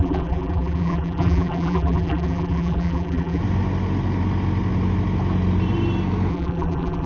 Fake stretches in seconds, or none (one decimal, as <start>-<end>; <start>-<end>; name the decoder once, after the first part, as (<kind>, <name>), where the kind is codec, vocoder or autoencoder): 0.0-3.4 (vocoder, BigVGAN v2); 6.3-7.1